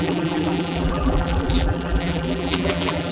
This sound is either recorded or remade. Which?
remade